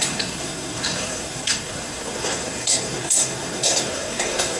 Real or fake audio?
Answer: fake